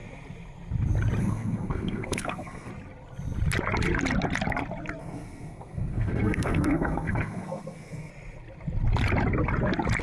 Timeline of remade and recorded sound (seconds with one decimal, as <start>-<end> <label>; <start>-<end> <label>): 0.0-1.2 recorded; 1.2-2.7 remade; 2.7-5.0 recorded; 5.0-8.1 remade; 8.1-10.0 recorded